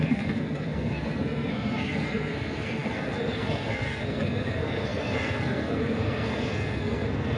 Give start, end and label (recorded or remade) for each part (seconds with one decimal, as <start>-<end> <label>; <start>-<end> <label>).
0.0-7.4 remade